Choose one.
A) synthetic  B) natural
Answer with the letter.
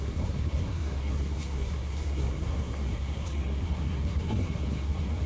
A